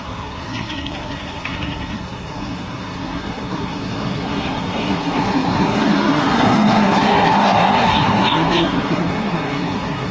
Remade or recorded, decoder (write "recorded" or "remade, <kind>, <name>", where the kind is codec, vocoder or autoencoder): remade, codec, SNAC